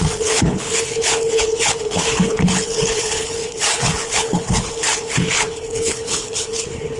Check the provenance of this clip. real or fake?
fake